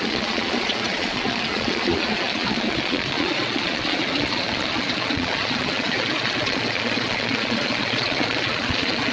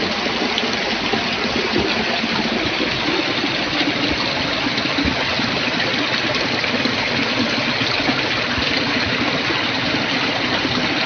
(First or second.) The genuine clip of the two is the second